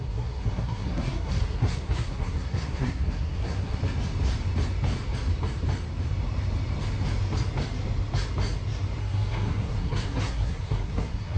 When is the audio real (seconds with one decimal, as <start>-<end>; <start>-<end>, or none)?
3.8-9.0